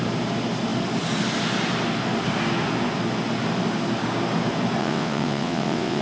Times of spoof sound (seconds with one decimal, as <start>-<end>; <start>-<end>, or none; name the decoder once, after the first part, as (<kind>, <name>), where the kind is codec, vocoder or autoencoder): 4.8-6.0 (vocoder, WaveNeXt)

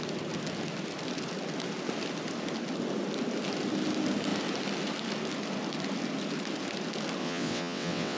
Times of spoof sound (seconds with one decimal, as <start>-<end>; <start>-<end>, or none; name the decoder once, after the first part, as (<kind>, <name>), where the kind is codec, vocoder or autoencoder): 7.2-8.2 (vocoder, WaveNeXt)

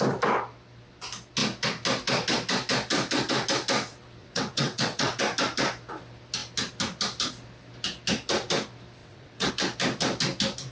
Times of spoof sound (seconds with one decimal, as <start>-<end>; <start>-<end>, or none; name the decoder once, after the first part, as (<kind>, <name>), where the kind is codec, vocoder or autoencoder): 4.2-5.2 (vocoder, WaveNeXt); 9.0-9.5

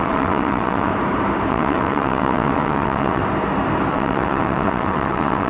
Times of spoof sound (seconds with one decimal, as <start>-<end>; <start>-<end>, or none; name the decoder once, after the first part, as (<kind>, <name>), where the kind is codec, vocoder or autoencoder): 0.0-0.9 (vocoder, WaveNeXt); 1.5-3.2; 3.9-5.5

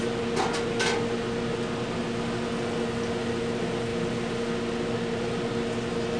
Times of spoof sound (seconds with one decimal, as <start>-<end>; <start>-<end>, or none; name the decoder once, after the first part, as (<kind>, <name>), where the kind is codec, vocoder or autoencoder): none

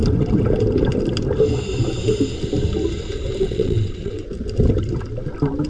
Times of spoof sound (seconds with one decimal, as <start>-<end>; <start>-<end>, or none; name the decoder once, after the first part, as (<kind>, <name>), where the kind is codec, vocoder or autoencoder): 3.4-4.3 (vocoder, WaveNeXt)

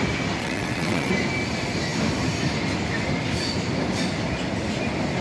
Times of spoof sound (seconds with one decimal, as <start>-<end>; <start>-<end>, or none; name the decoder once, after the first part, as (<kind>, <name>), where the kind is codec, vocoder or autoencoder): 0.4-1.1 (vocoder, WaveNeXt)